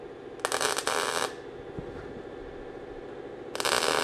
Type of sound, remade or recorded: recorded